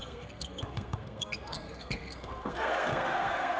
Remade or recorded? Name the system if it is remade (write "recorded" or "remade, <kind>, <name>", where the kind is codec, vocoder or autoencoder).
remade, codec, SNAC